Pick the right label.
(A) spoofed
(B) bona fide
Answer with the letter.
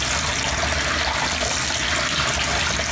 B